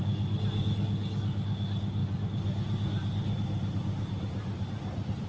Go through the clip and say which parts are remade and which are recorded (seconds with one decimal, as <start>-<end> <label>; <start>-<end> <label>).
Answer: 0.0-2.0 recorded; 2.0-5.3 remade